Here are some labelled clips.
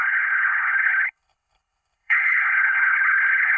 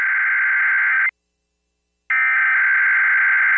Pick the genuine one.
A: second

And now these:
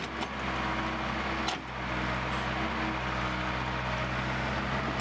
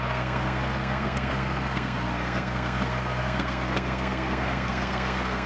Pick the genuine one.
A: first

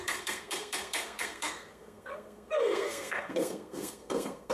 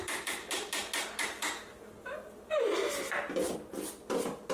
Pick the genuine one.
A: second